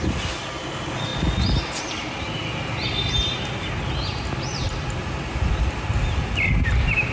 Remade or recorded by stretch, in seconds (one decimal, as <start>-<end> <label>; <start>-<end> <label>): 0.0-4.5 recorded; 4.5-5.5 remade; 5.5-7.1 recorded